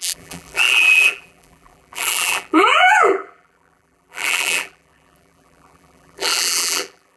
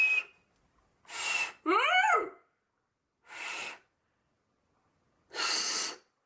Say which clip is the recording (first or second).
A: second